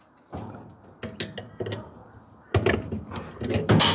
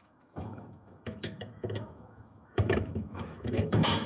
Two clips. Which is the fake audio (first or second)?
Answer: second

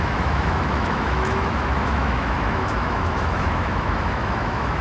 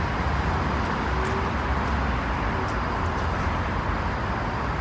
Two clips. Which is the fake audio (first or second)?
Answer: first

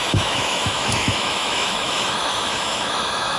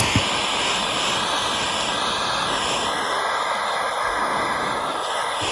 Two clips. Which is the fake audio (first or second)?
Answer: first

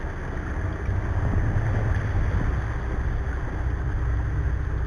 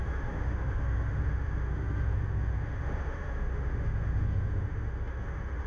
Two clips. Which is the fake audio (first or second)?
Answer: second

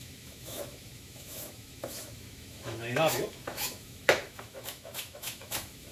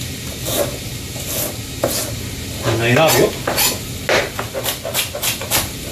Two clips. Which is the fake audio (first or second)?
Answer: first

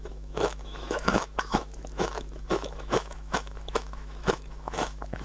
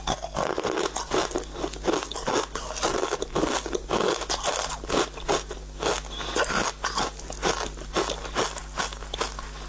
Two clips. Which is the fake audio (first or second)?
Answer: first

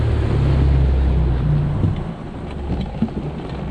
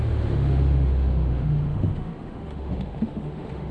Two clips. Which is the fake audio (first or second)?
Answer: second